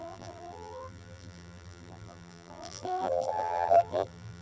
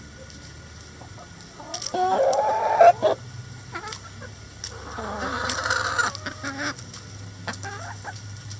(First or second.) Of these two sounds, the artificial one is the first